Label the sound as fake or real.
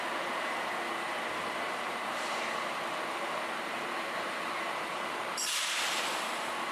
fake